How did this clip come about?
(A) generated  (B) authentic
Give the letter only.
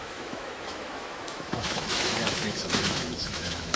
A